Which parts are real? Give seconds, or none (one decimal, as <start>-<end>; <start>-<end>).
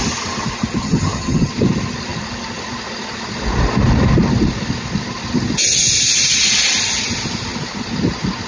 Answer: 0.0-0.8; 1.5-8.5